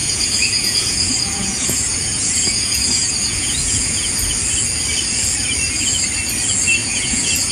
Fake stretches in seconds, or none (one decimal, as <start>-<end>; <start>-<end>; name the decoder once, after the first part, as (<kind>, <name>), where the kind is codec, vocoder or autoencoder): 0.0-4.1 (vocoder, Vocos); 6.8-7.5